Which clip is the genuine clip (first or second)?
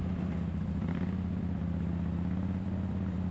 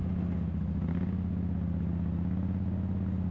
second